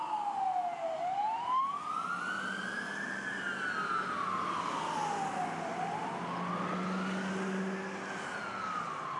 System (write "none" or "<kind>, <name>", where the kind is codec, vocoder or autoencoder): none